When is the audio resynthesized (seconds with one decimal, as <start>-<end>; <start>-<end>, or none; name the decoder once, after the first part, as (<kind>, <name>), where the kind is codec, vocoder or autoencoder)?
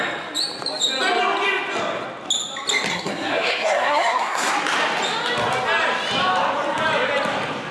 2.9-4.5 (codec, SNAC)